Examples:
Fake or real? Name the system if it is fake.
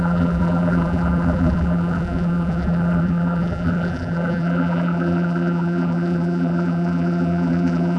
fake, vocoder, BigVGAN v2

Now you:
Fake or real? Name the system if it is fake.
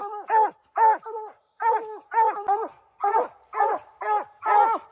real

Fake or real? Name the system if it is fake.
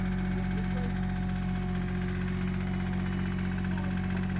real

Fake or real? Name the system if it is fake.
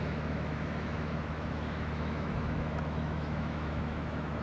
fake, autoencoder, DAC-VAE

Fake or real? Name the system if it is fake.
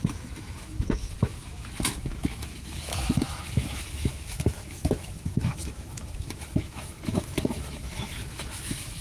fake, autoencoder, DAC-VAE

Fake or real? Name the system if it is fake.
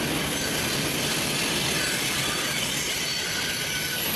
real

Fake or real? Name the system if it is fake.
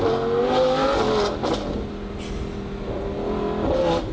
real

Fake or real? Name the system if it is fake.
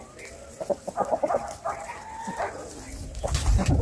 real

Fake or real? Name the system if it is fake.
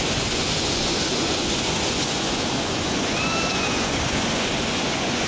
fake, vocoder, Vocos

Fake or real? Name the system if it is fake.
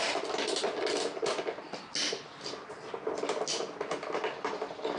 real